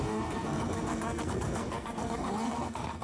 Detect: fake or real fake